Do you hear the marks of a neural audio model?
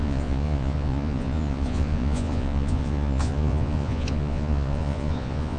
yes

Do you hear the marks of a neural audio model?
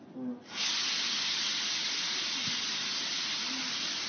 no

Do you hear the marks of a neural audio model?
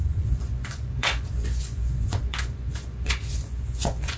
yes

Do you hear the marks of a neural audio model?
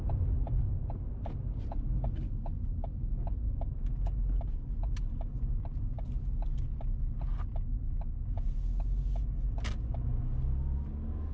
no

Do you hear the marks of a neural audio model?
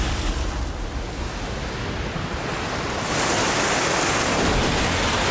no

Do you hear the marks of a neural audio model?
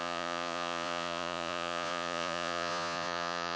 yes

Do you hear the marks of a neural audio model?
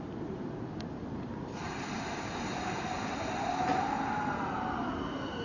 no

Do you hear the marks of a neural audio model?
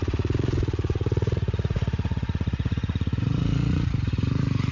yes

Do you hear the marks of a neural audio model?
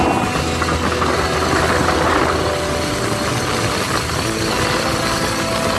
no